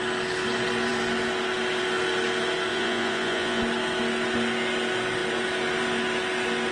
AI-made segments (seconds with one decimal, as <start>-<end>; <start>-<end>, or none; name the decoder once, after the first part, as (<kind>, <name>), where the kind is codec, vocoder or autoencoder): 2.7-3.6 (vocoder, Vocos)